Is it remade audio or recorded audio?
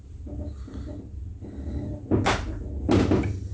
recorded